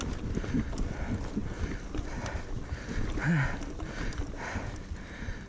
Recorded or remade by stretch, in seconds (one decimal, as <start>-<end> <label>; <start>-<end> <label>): 0.0-5.5 recorded